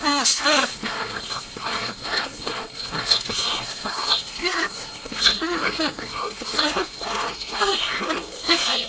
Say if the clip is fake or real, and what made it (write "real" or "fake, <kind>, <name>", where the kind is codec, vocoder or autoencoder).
fake, codec, SNAC